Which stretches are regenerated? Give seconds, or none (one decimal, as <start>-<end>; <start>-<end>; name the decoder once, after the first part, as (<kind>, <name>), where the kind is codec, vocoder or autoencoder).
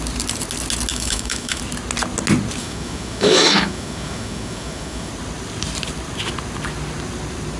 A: 0.9-1.6 (autoencoder, DAC-VAE); 2.6-5.1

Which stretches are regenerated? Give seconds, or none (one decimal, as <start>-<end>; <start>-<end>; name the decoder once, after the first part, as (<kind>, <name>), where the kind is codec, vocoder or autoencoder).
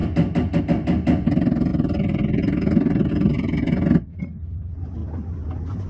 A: none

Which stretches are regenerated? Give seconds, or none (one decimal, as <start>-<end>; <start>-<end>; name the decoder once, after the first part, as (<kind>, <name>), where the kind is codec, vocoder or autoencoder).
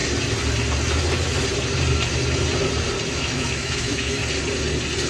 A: 3.1-4.2 (autoencoder, DAC-VAE)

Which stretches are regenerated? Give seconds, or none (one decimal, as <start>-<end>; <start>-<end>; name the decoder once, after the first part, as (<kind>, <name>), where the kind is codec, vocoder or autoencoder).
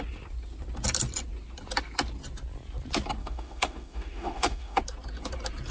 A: 3.2-4.8 (autoencoder, DAC-VAE)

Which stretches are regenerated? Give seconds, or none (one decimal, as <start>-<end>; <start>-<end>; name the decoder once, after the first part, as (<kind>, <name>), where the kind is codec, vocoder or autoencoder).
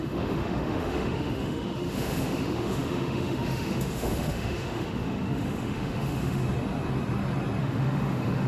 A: 0.0-6.4 (autoencoder, DAC-VAE); 7.6-8.5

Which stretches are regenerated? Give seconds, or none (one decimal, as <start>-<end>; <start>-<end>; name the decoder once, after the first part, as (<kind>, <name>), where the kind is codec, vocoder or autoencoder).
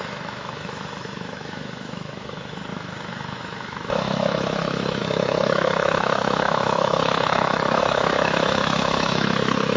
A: 0.0-9.8 (autoencoder, DAC-VAE)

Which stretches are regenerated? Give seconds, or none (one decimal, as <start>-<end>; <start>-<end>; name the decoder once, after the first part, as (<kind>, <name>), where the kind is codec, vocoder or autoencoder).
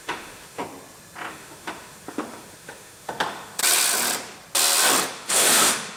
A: 0.0-0.6 (autoencoder, DAC-VAE); 1.3-3.6; 5.1-6.0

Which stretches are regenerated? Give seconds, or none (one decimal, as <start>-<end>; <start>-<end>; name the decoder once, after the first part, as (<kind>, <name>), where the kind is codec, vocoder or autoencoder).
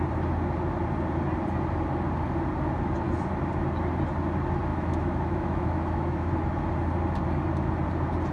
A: 4.7-6.3 (autoencoder, DAC-VAE)